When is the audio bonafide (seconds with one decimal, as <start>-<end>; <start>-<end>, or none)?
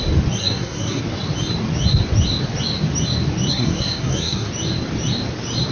0.0-0.4; 1.0-3.5; 4.5-5.7